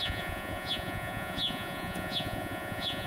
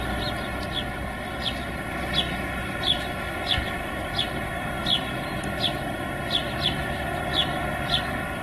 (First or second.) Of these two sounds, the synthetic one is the first